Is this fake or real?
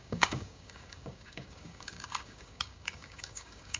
fake